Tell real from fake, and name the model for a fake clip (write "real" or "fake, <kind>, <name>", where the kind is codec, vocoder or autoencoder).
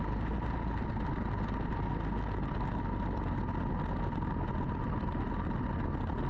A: real